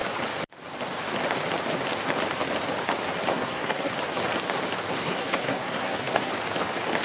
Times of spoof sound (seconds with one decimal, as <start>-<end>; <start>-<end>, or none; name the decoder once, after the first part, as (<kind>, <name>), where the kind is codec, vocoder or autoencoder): 3.3-3.9 (codec, SNAC); 5.0-6.3